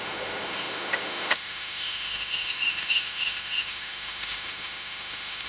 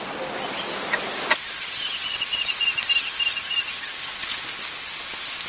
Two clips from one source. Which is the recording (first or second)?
second